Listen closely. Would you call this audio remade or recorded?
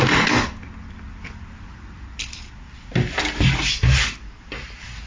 recorded